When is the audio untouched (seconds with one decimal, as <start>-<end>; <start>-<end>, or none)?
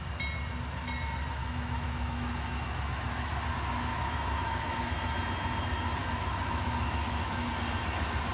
0.0-1.4; 3.5-3.9; 4.8-6.0; 7.5-8.3